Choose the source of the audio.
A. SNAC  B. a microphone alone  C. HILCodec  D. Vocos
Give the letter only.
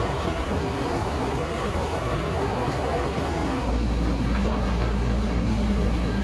A